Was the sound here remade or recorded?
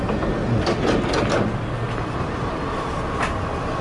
recorded